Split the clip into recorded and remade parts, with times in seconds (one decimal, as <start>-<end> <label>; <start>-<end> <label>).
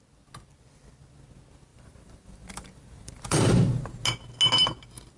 0.0-1.7 recorded; 1.7-4.0 remade; 4.0-5.2 recorded